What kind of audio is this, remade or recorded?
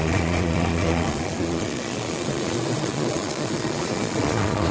remade